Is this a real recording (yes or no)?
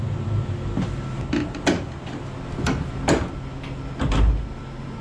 yes